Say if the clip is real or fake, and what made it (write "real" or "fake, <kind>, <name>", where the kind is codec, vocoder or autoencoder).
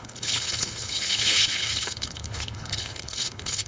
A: fake, codec, HILCodec